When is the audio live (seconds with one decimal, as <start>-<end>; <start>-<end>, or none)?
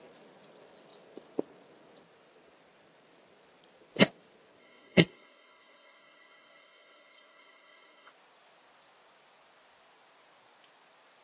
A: 0.0-4.6; 8.1-11.2